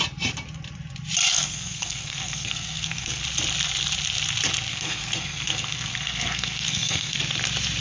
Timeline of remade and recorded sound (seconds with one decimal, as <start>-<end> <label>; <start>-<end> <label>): 0.0-1.3 recorded; 1.3-3.2 remade; 3.2-4.7 recorded; 4.7-7.2 remade; 7.2-7.8 recorded